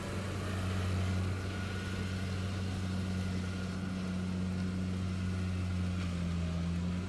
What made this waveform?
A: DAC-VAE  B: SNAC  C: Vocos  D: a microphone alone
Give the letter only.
D